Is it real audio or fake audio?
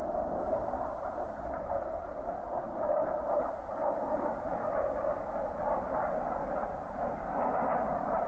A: real